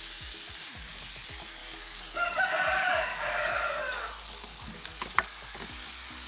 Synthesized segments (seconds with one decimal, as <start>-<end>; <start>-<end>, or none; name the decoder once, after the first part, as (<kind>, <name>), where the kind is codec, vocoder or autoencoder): 1.6-2.4 (codec, DAC); 3.1-6.3